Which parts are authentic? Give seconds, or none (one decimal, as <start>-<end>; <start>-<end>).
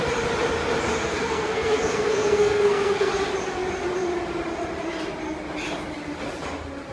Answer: 0.0-1.0; 3.1-6.9